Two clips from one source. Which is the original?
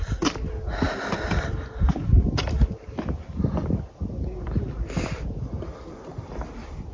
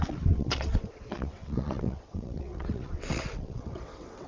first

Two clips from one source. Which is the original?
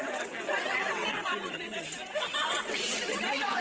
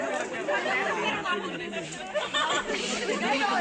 second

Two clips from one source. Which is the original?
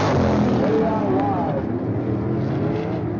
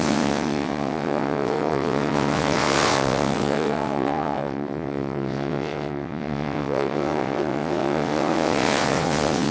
first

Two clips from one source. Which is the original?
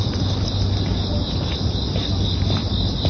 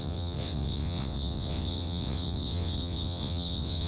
first